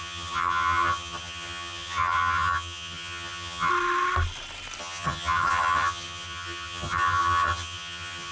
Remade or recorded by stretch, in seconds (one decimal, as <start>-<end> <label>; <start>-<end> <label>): 0.0-3.7 remade; 3.7-4.8 recorded; 4.8-8.3 remade